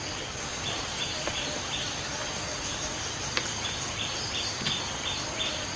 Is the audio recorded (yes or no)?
no